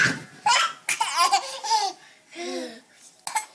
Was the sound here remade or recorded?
recorded